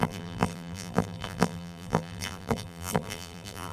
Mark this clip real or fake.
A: fake